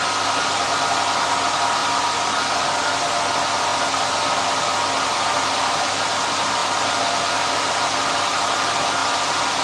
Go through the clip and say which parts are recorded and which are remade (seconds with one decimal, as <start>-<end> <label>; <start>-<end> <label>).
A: 0.0-9.6 recorded